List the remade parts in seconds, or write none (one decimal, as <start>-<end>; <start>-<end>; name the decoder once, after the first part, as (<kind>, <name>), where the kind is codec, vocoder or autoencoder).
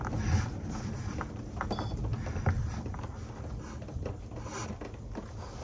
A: none